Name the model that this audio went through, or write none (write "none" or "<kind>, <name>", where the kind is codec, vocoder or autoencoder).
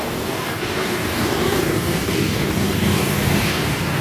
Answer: codec, DAC